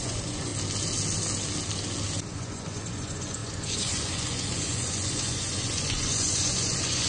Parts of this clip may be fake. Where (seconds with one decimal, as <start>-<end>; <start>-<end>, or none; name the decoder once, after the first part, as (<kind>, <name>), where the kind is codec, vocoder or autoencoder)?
0.0-0.5 (vocoder, Vocos); 2.3-7.1

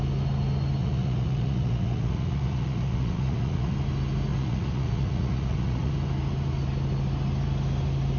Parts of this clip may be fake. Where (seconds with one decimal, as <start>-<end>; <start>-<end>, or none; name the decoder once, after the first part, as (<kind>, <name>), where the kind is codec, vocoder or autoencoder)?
0.8-3.7 (vocoder, Vocos); 4.3-5.9

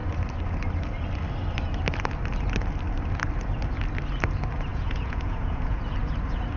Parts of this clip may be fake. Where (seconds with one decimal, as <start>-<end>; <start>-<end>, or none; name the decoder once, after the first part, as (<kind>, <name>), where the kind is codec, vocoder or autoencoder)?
4.7-5.8 (vocoder, Vocos)

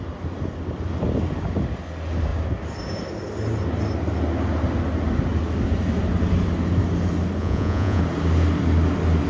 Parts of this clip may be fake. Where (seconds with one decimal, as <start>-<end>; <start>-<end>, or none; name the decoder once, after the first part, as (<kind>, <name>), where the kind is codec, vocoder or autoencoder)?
7.4-8.0 (vocoder, Vocos)

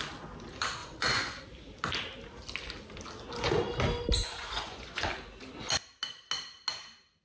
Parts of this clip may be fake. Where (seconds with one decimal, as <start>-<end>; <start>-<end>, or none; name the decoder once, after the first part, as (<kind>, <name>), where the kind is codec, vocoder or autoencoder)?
0.8-1.4 (vocoder, Vocos); 4.2-5.1

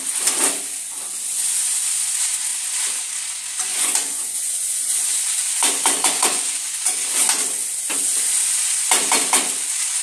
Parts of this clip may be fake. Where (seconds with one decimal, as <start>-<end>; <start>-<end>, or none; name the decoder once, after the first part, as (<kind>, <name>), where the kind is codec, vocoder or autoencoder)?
3.7-6.8 (vocoder, Vocos)